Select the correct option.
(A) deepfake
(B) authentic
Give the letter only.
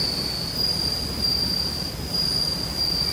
B